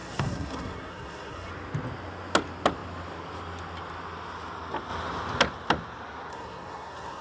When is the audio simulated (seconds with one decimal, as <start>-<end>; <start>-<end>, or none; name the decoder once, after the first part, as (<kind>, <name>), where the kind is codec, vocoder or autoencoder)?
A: 0.0-1.5 (codec, SNAC); 6.3-7.2